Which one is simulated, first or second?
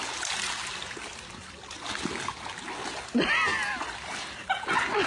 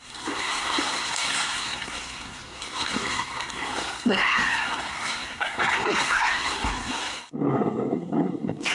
second